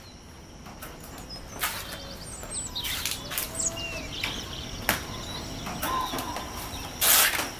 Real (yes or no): yes